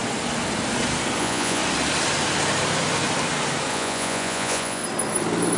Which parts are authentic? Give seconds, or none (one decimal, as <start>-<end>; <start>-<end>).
0.0-1.2; 1.6-3.7; 4.8-5.6